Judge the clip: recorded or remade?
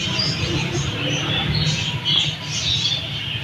recorded